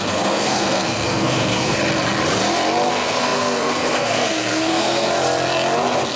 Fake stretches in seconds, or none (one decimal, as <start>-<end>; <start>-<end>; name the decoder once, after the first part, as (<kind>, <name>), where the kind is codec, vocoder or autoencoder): 0.0-1.8 (codec, SNAC); 2.9-5.1